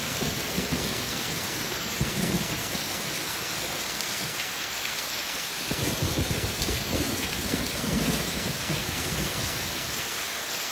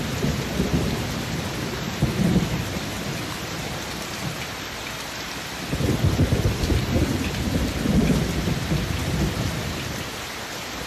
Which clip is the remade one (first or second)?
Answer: first